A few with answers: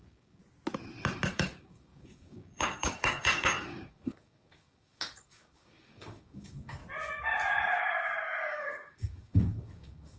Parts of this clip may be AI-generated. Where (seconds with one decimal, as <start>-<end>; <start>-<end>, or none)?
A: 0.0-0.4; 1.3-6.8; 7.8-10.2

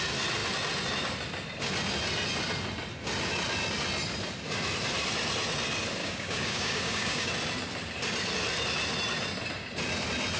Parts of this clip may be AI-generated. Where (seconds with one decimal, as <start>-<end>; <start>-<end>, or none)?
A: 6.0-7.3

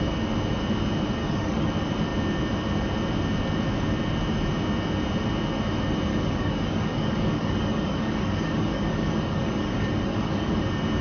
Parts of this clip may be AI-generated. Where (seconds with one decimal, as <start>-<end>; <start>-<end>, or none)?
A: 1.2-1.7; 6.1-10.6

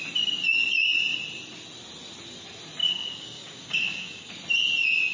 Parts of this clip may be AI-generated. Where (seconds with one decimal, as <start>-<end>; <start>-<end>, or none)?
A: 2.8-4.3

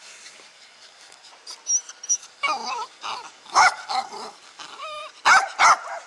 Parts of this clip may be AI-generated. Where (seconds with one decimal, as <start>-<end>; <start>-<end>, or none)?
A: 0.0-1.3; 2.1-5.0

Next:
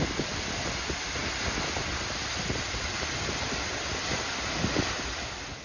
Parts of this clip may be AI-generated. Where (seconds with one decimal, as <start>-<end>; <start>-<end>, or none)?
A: none